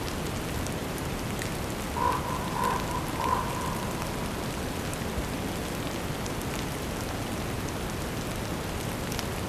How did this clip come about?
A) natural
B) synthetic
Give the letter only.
A